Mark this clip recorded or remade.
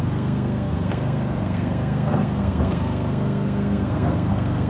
remade